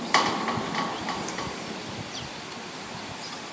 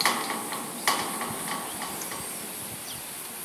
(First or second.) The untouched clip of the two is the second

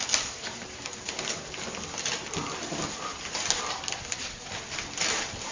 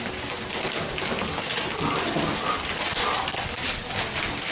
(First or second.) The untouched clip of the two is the second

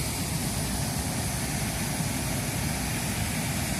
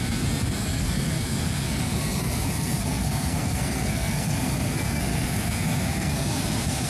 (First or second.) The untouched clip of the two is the first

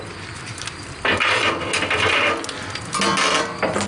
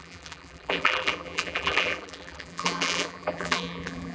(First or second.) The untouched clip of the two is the first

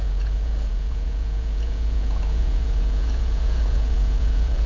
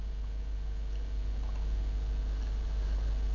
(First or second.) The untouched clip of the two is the second